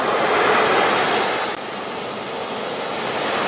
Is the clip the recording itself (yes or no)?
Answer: yes